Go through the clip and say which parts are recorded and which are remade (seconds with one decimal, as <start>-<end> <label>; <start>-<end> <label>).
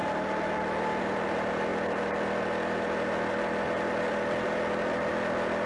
0.0-5.7 recorded